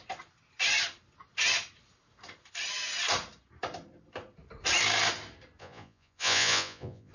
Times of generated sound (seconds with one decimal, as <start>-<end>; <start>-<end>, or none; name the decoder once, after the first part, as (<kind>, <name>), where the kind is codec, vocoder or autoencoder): 5.6-7.1 (vocoder, Vocos)